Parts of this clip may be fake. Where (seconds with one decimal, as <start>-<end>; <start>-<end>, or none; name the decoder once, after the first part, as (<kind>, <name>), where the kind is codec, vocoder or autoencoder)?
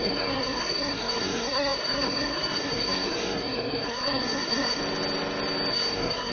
0.0-4.8 (codec, SNAC); 5.7-6.3